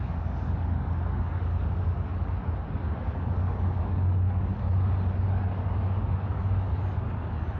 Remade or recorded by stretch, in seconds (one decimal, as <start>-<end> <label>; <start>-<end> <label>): 0.0-2.1 remade; 2.1-2.7 recorded; 2.7-4.5 remade; 4.5-5.2 recorded; 5.2-7.6 remade